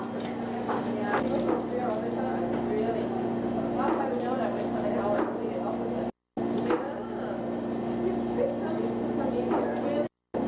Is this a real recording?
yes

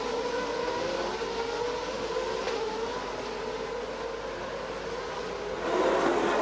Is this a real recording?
yes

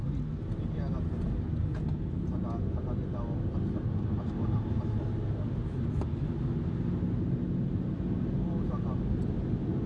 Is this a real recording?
yes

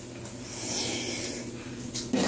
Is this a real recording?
yes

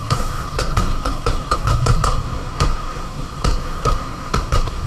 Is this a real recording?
no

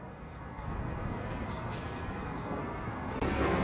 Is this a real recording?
no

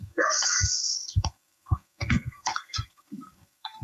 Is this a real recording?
no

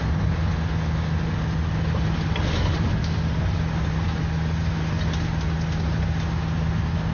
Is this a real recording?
yes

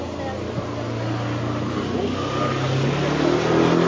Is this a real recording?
yes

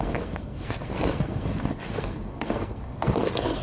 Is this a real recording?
no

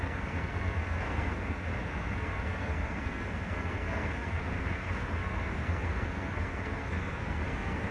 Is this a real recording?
no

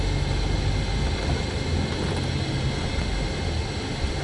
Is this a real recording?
yes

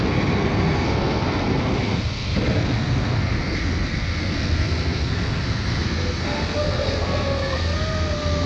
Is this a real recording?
no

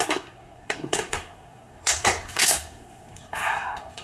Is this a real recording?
no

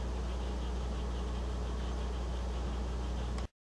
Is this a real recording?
yes